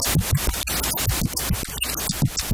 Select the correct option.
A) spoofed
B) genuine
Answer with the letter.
B